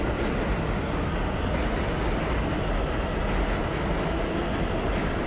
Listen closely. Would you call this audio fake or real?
real